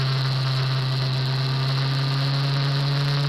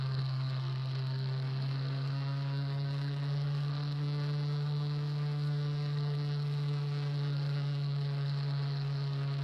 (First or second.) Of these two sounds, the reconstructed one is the second